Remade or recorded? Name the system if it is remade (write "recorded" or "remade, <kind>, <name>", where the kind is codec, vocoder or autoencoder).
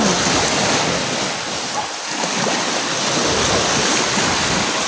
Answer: recorded